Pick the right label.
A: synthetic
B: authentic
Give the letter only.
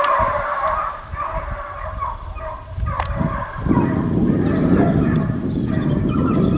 A